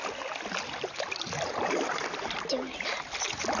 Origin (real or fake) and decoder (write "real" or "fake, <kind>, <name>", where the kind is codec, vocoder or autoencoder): real